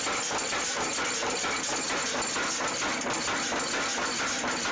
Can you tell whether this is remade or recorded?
recorded